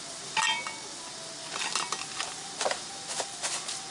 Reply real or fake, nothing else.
real